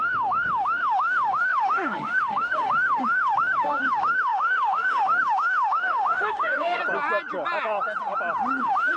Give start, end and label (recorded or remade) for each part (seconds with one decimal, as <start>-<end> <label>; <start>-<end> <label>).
0.0-6.8 remade; 6.8-8.6 recorded; 8.6-9.0 remade